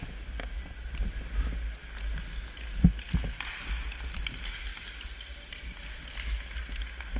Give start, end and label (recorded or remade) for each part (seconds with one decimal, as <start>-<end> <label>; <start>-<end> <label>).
0.0-7.2 recorded